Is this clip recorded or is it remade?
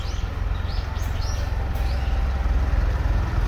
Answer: recorded